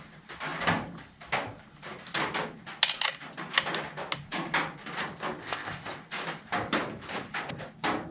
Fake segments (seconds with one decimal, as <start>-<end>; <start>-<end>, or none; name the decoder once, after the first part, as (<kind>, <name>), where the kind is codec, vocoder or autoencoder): 5.4-5.9 (codec, ZipCodec)